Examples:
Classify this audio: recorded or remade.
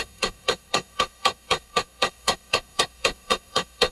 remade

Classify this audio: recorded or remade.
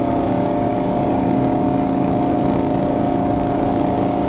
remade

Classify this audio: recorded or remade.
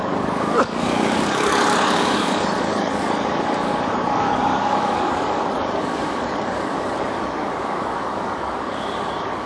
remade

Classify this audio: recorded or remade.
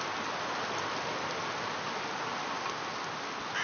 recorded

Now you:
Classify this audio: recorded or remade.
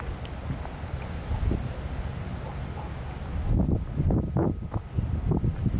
recorded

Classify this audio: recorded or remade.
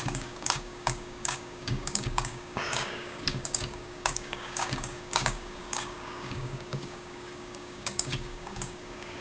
remade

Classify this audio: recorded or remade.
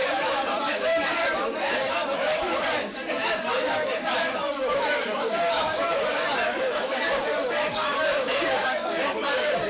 remade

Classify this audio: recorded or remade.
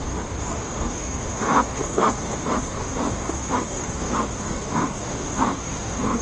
remade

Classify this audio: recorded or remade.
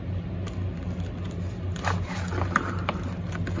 recorded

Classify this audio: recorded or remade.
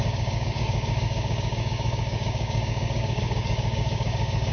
remade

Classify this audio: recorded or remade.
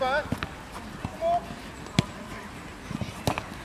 recorded